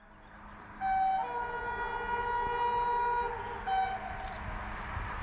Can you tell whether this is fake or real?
real